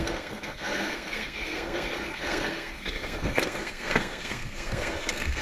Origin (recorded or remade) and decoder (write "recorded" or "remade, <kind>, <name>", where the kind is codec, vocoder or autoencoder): remade, codec, SNAC